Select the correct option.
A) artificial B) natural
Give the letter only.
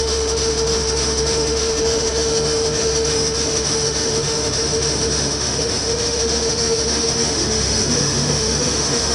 A